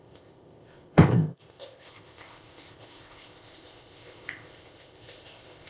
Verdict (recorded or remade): remade